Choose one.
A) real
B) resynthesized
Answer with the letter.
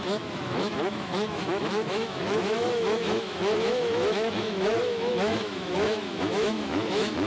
B